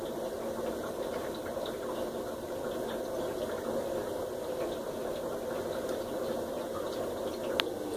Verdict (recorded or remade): recorded